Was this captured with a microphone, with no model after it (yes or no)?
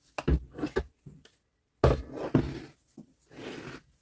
yes